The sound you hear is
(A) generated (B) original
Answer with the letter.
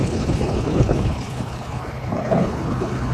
A